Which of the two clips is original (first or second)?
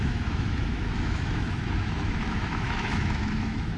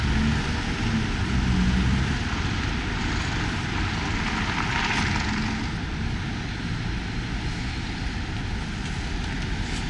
second